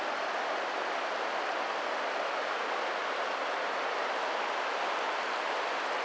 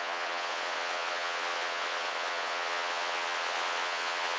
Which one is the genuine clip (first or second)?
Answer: first